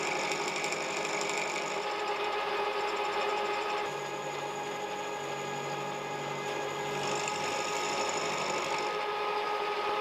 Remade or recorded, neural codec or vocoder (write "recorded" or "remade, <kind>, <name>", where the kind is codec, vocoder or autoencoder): recorded